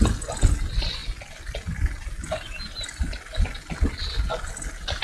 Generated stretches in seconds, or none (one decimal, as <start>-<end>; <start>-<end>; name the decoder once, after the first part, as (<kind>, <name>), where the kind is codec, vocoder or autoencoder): none